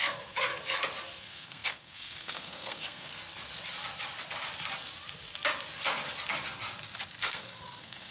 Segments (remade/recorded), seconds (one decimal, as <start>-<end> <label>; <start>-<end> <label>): 0.0-0.5 remade; 0.5-1.2 recorded; 1.2-3.1 remade; 3.1-7.2 recorded; 7.2-8.1 remade